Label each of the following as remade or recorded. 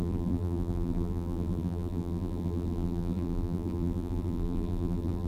remade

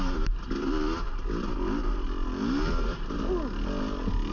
recorded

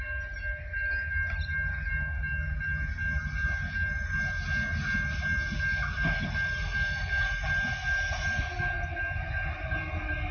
recorded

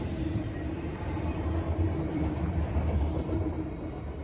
remade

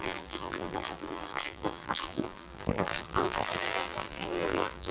remade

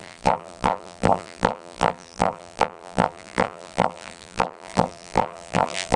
remade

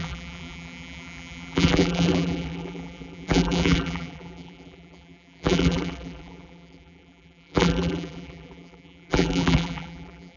remade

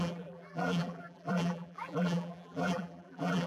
remade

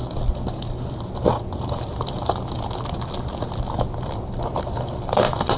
recorded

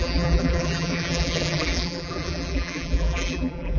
remade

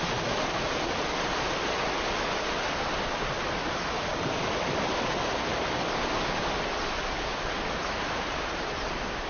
remade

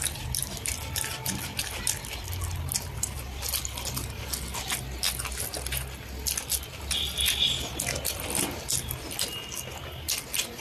recorded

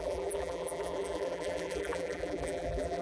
remade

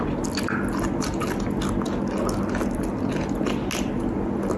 recorded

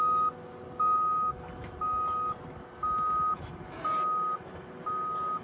recorded